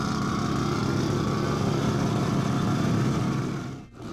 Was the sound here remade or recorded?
recorded